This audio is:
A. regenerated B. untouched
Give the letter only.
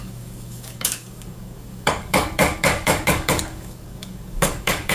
A